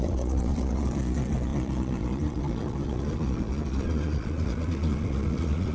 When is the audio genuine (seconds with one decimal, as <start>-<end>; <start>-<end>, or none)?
none